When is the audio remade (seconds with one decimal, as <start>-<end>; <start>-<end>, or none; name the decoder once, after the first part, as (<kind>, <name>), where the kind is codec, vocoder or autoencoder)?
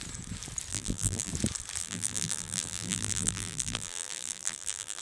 0.7-1.3 (vocoder, BigVGAN v2); 1.8-5.0